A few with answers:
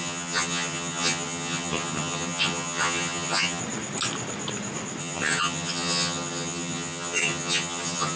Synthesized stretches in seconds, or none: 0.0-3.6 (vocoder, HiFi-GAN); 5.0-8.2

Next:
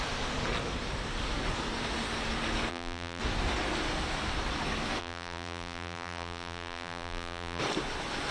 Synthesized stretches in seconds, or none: 2.7-3.2 (vocoder, BigVGAN v2); 5.0-7.6

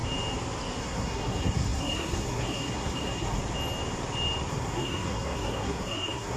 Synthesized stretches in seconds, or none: 0.8-3.4 (codec, SNAC); 4.5-6.4

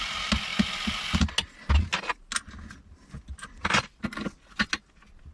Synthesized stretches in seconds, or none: none

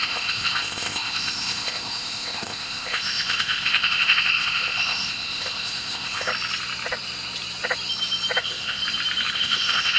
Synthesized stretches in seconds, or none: 0.0-6.3 (codec, ZipCodec); 8.4-8.8; 9.3-10.0

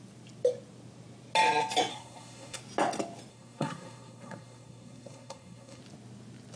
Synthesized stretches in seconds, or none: 1.9-2.6 (codec, SNAC); 3.3-5.8

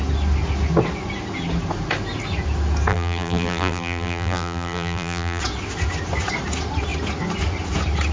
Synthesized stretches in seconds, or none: 2.9-5.4 (vocoder, BigVGAN v2)

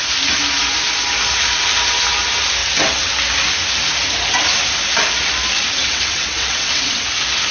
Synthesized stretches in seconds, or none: 2.6-3.1 (vocoder, WaveNeXt); 5.8-7.0